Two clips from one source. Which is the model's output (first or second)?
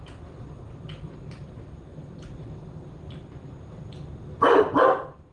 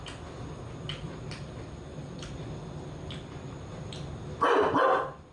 first